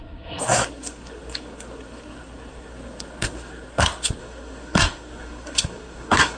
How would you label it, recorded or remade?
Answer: remade